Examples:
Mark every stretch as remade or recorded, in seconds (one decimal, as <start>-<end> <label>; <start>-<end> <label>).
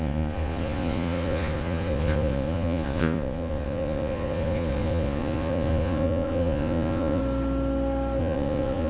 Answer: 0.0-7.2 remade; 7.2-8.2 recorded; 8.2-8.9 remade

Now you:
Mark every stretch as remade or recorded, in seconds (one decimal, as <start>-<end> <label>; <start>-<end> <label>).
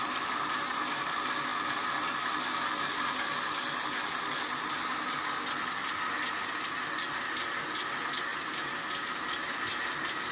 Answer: 0.0-8.3 recorded; 8.3-8.9 remade; 8.9-10.3 recorded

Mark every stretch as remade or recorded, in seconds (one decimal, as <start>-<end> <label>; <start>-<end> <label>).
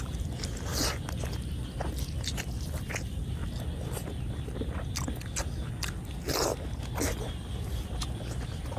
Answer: 0.0-3.4 remade; 3.4-7.5 recorded; 7.5-8.8 remade